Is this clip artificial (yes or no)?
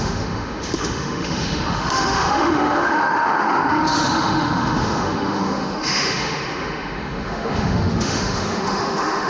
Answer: yes